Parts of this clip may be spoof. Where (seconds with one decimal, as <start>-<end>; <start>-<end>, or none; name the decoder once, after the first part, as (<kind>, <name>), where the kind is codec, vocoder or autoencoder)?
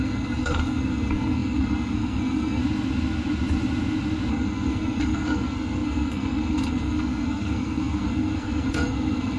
0.0-2.6 (codec, SNAC); 4.3-9.4